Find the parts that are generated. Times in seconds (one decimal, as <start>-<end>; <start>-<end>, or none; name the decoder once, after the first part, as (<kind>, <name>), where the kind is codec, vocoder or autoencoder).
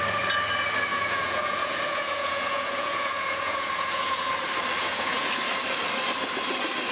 0.9-4.3 (vocoder, Vocos); 4.8-5.3